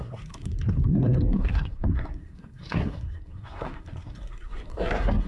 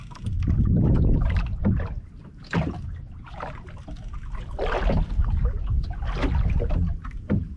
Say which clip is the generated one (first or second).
first